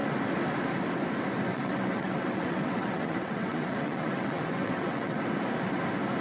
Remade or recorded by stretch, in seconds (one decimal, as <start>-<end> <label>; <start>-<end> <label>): 0.0-1.5 recorded; 1.5-5.2 remade; 5.2-6.2 recorded